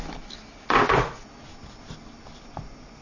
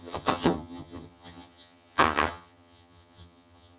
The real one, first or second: first